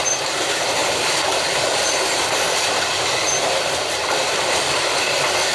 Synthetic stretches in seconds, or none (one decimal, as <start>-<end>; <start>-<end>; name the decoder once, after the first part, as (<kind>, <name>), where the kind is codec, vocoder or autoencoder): none